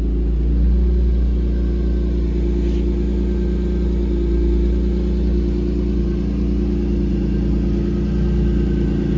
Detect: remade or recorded recorded